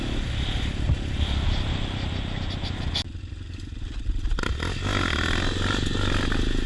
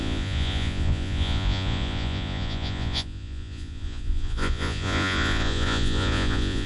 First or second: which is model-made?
second